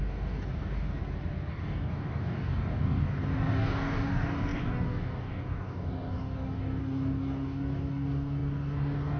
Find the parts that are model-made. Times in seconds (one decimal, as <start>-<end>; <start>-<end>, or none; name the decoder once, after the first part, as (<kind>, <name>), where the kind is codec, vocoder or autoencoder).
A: 0.0-1.0 (codec, DAC); 1.5-9.2